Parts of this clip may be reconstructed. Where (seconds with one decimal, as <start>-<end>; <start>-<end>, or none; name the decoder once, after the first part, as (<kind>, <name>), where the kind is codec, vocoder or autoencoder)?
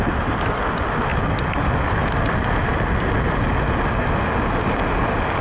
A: none